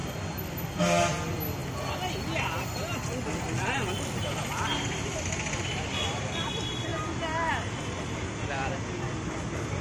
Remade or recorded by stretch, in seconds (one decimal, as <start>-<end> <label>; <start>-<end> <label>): 0.0-9.8 recorded